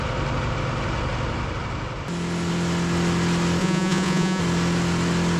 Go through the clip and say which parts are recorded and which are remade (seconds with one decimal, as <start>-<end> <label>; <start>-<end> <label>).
0.0-3.6 recorded; 3.6-4.4 remade; 4.4-5.4 recorded

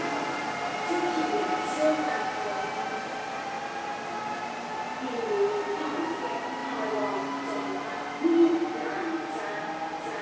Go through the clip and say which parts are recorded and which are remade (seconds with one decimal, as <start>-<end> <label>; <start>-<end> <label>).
0.0-10.2 recorded

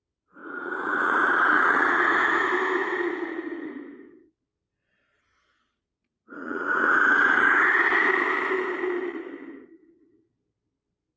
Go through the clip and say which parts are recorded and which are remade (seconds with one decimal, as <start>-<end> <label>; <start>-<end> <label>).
0.0-0.4 recorded; 0.4-2.4 remade; 2.4-2.8 recorded; 2.8-4.0 remade; 4.0-6.0 recorded; 6.0-7.6 remade; 7.6-11.2 recorded

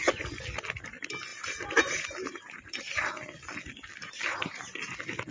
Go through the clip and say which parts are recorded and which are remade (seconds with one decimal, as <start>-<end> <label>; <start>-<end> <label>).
0.0-1.3 recorded; 1.3-3.1 remade; 3.1-4.0 recorded; 4.0-4.7 remade; 4.7-5.3 recorded

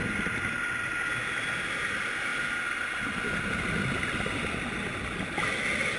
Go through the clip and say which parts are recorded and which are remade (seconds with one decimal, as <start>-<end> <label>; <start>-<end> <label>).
0.0-6.0 recorded

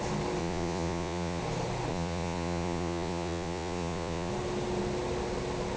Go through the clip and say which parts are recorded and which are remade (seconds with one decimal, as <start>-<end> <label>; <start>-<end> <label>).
0.0-0.4 recorded; 0.4-1.4 remade; 1.4-1.9 recorded; 1.9-4.3 remade; 4.3-5.8 recorded